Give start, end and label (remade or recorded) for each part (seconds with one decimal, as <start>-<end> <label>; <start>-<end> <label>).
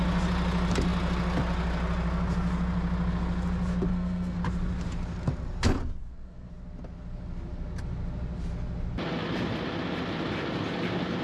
0.0-3.9 recorded; 3.9-4.4 remade; 4.4-6.0 recorded; 6.0-6.5 remade; 6.5-11.2 recorded